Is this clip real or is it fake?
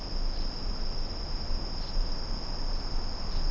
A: real